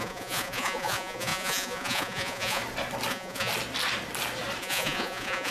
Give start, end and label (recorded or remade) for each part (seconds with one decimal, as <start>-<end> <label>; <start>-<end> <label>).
0.0-2.6 remade; 2.6-3.1 recorded; 3.1-3.5 remade; 3.5-4.6 recorded; 4.6-5.5 remade